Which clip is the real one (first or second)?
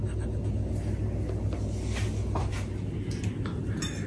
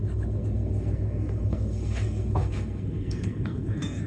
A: first